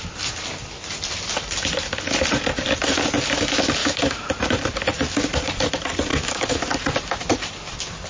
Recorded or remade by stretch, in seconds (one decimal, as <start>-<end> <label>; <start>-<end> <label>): 0.0-3.8 recorded; 3.8-4.3 remade; 4.3-6.1 recorded; 6.1-6.6 remade; 6.6-8.1 recorded